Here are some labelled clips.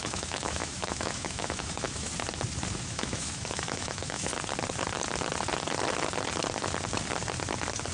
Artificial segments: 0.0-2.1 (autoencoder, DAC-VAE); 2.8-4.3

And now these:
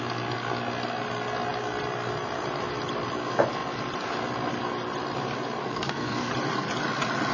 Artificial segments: 5.6-6.3 (codec, SNAC)

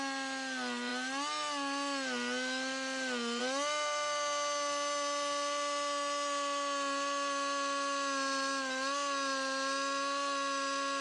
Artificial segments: none

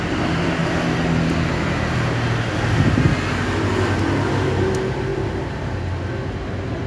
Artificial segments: 5.1-5.6 (vocoder, BigVGAN v2)

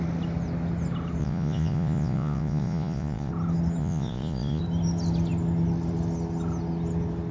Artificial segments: 1.2-3.3 (vocoder, Vocos); 3.8-4.6